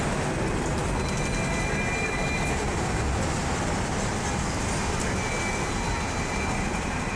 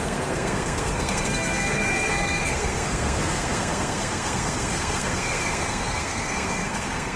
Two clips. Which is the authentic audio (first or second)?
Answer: first